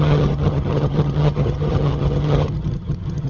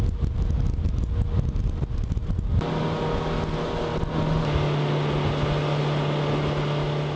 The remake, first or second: first